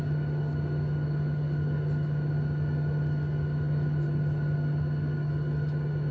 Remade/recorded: recorded